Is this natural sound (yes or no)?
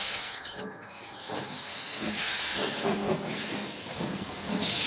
no